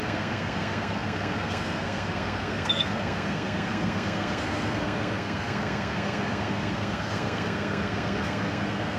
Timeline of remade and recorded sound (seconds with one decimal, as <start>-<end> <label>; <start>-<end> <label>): 0.0-9.0 remade